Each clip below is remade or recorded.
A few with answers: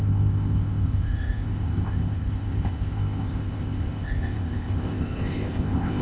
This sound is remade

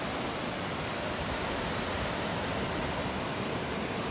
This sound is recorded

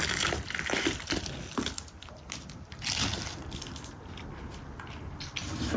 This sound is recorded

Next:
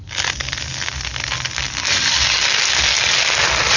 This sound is recorded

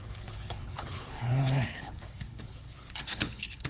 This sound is remade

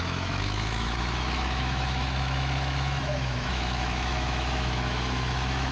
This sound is remade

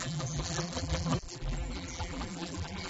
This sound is remade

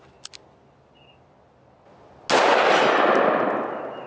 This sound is recorded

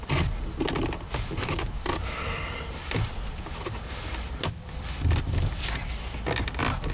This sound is recorded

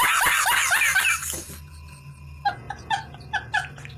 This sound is recorded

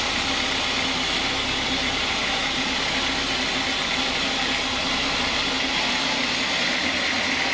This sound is recorded